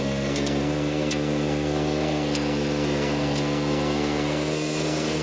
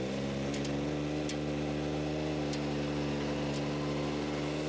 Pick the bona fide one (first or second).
second